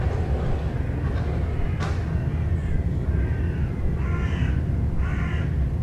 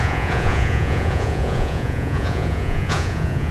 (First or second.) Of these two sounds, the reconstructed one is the second